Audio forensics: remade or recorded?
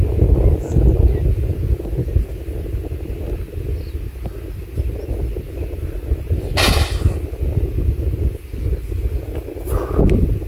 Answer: recorded